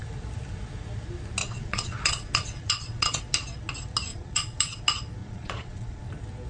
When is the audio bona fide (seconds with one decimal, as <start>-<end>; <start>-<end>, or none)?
0.0-1.4; 3.2-4.1; 4.8-5.2; 6.0-6.5